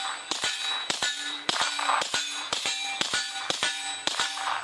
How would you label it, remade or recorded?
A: remade